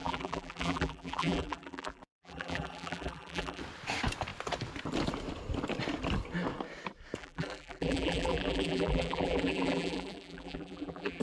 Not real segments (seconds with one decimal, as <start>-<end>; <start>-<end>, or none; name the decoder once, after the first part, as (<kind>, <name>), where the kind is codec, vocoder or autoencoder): 0.0-3.6 (vocoder, BigVGAN v2); 7.2-11.2